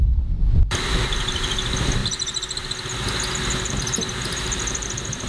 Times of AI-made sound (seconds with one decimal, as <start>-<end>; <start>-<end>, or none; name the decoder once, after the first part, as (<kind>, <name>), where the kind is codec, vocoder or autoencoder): 0.0-2.0 (vocoder, BigVGAN v2); 3.7-5.3